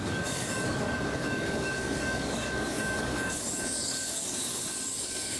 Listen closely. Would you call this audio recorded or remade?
remade